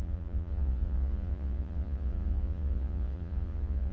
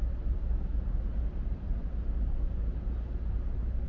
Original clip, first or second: second